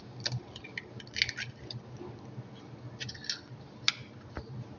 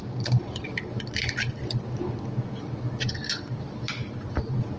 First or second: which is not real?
second